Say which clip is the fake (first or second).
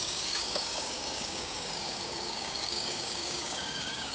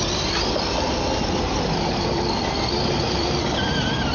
first